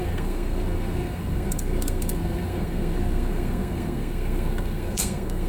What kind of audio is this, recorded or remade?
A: remade